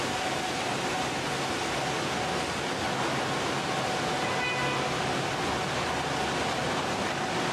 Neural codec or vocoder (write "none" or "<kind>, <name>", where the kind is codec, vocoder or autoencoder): none